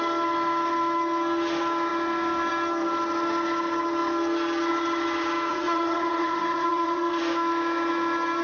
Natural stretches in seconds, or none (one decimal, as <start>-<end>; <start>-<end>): 0.0-5.5; 7.2-8.4